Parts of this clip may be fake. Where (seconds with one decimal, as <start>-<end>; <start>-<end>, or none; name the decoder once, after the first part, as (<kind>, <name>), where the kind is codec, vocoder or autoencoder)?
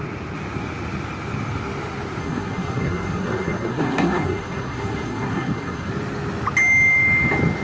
2.2-5.9 (codec, SNAC)